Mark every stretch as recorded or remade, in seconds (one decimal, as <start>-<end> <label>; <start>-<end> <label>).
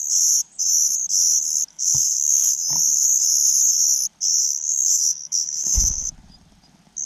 0.0-1.7 recorded; 1.7-2.6 remade; 2.6-4.4 recorded; 4.4-6.1 remade; 6.1-7.1 recorded